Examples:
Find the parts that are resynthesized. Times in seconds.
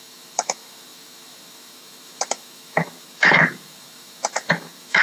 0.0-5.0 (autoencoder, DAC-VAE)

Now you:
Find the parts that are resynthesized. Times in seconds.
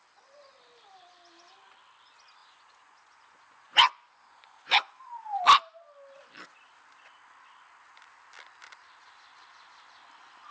2.4-5.1 (vocoder, Vocos)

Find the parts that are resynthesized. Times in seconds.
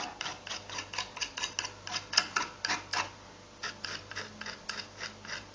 none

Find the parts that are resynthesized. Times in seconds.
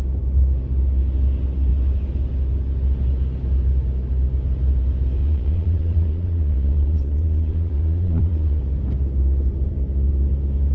5.2-8.6 (vocoder, Vocos)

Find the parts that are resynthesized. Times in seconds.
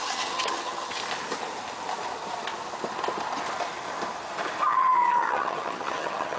0.0-1.0 (vocoder, HiFi-GAN); 4.7-6.4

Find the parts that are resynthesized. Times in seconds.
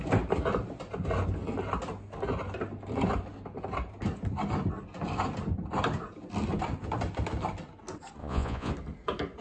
8.2-8.7 (vocoder, Vocos)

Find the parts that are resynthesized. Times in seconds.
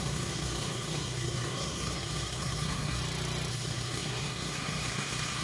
0.0-3.0 (codec, SNAC); 3.5-5.4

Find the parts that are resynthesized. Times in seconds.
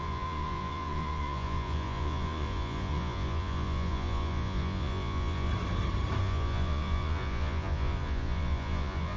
0.0-5.5 (vocoder, Vocos); 6.2-9.2